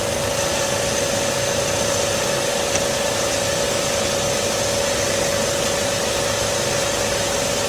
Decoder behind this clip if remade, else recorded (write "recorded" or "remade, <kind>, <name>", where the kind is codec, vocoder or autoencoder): recorded